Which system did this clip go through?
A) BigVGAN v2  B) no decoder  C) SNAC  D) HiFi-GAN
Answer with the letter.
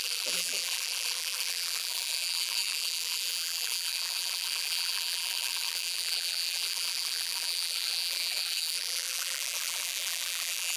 A